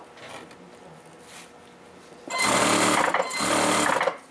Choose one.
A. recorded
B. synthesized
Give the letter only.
A